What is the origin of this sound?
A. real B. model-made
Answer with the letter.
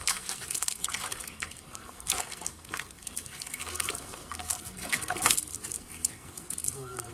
B